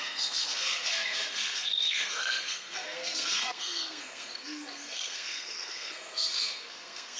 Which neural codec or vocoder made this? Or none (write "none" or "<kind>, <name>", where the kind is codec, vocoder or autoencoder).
codec, SNAC